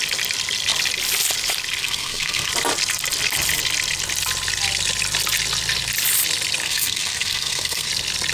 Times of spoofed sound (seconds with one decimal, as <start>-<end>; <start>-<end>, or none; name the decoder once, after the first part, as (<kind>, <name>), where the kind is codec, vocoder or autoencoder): 1.8-2.5 (codec, SNAC); 6.6-7.9